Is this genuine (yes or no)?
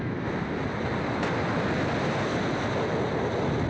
yes